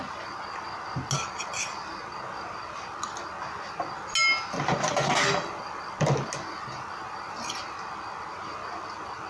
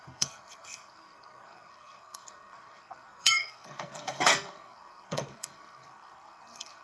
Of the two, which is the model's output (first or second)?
second